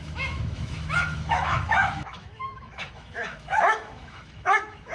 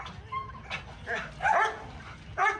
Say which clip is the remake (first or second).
first